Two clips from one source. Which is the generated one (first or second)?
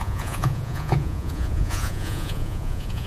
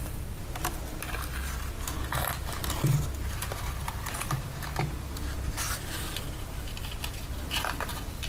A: first